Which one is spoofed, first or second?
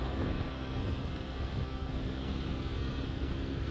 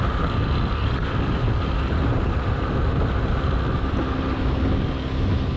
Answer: first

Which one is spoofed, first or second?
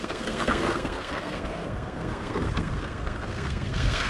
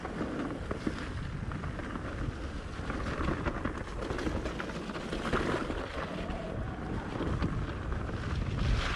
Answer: first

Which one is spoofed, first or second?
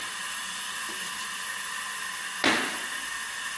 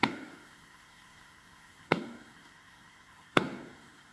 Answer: second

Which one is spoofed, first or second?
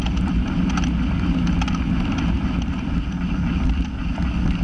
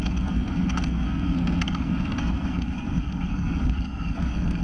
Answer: second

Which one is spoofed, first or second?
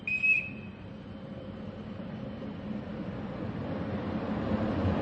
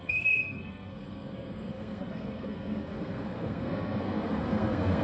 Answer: second